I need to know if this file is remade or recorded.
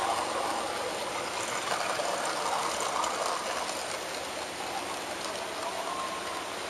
recorded